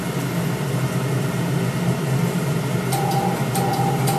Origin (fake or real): real